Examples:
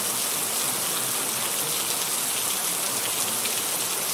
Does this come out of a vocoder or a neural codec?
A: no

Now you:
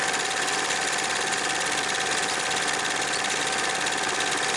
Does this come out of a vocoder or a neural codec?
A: no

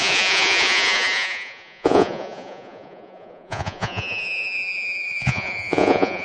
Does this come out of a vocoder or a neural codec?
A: yes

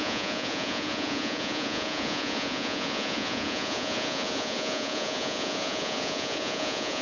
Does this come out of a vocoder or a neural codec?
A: yes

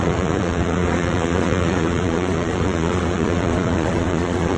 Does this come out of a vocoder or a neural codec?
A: yes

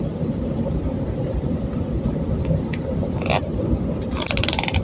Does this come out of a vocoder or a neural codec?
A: no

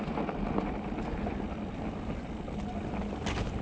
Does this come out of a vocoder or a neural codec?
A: no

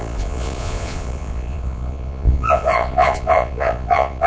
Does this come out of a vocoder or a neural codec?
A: yes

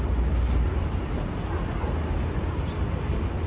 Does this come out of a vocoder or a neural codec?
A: no